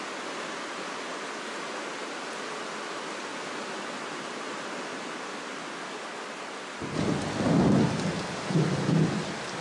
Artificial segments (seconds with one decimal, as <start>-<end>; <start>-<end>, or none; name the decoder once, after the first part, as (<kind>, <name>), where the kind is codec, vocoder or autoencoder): none